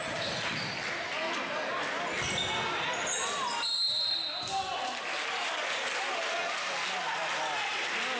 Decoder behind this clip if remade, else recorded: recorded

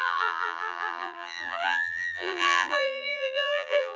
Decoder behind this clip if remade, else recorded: remade, vocoder, BigVGAN v2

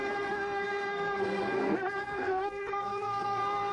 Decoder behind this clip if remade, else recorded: remade, codec, SNAC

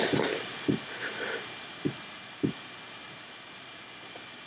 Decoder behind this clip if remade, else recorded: recorded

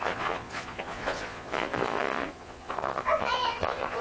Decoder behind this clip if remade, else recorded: remade, vocoder, Vocos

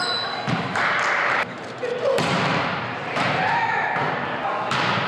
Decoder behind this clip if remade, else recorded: remade, vocoder, BigVGAN v2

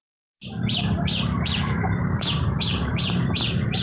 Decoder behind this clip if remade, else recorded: remade, vocoder, BigVGAN v2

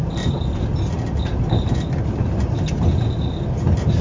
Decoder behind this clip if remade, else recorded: recorded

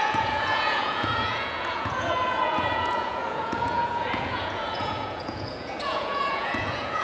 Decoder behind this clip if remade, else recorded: remade, vocoder, Vocos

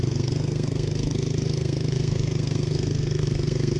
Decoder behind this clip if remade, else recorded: remade, codec, SNAC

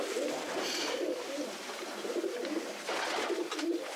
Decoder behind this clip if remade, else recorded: recorded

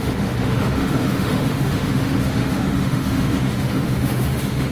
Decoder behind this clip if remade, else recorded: remade, autoencoder, DAC-VAE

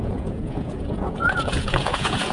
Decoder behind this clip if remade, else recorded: remade, vocoder, Vocos